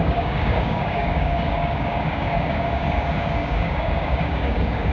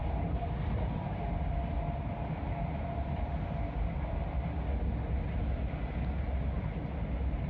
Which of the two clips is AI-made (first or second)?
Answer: first